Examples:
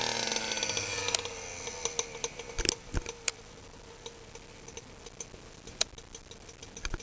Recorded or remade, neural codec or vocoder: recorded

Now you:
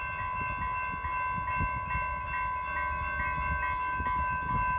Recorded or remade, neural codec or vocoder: recorded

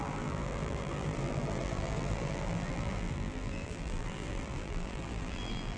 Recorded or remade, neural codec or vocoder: remade, vocoder, BigVGAN v2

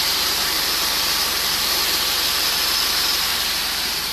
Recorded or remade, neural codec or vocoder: remade, vocoder, BigVGAN v2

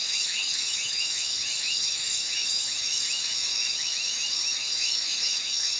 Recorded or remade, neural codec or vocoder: remade, autoencoder, DAC-VAE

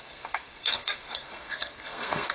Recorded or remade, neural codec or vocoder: remade, codec, SNAC